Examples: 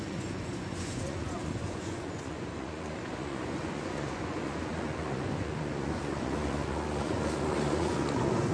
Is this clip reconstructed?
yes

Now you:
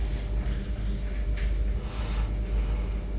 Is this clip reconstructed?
no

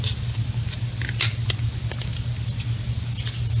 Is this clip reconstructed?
no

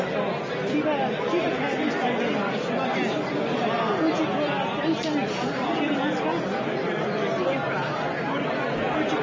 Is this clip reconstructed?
no